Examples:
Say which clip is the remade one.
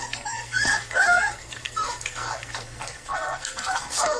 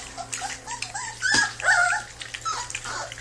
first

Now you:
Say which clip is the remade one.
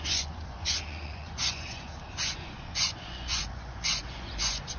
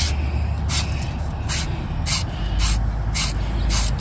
first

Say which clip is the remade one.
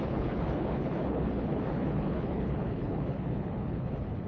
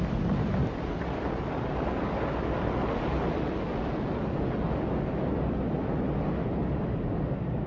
first